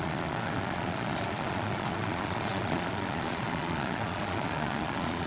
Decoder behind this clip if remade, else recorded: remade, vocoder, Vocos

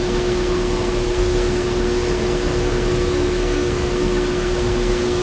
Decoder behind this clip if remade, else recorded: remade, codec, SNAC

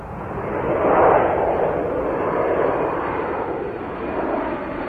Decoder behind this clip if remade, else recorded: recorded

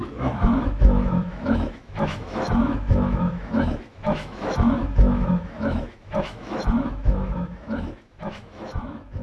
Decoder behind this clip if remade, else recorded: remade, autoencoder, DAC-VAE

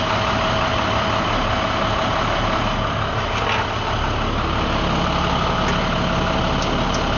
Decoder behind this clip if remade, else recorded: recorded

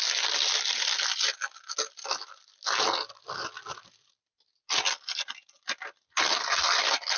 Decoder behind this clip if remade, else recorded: recorded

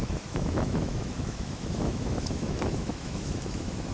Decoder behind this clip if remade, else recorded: remade, autoencoder, DAC-VAE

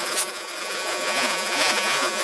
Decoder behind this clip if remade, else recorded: remade, vocoder, Vocos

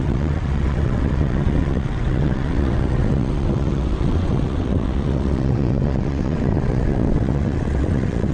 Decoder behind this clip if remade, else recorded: remade, vocoder, WaveNeXt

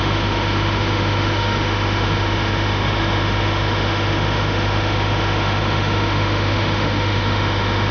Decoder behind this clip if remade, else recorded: remade, autoencoder, DAC-VAE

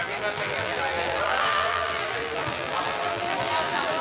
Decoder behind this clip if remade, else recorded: remade, vocoder, BigVGAN v2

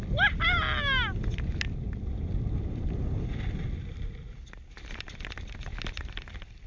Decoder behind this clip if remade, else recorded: recorded